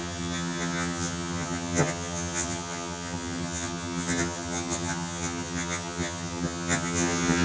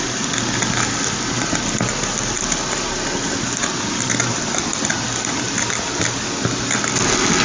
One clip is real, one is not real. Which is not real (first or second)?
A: first